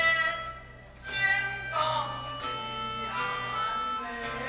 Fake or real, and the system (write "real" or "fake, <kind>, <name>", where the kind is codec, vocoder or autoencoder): real